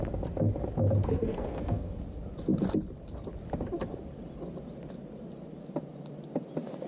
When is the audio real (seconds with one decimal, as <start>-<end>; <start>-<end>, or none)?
0.0-1.0; 2.0-6.9